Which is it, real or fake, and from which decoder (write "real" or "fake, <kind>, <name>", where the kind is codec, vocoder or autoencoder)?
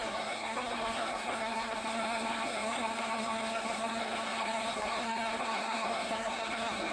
fake, codec, SNAC